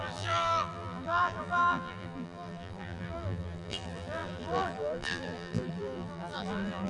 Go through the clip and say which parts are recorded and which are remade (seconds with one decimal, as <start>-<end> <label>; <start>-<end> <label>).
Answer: 0.0-6.9 remade